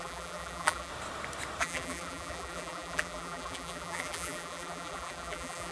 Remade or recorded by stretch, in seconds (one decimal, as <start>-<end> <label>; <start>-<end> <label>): 0.0-0.9 remade; 0.9-1.6 recorded; 1.6-5.7 remade